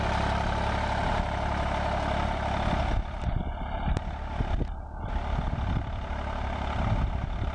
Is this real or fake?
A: real